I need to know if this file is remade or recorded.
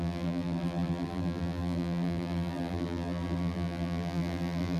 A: remade